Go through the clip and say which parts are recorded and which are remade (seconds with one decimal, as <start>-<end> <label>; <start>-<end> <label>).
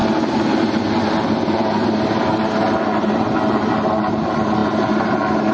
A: 0.0-5.5 recorded